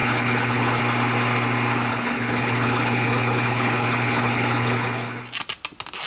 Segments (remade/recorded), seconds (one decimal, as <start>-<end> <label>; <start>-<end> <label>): 0.0-0.8 remade; 0.8-1.9 recorded; 1.9-5.2 remade; 5.2-6.1 recorded